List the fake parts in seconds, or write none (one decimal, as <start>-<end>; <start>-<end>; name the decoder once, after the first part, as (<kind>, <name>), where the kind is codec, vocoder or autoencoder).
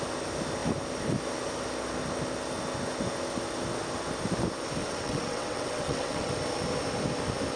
4.8-6.3 (vocoder, WaveNeXt)